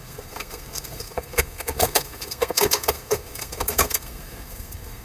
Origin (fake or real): fake